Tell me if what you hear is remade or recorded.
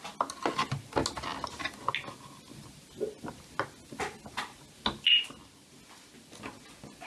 recorded